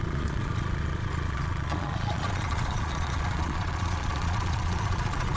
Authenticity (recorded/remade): remade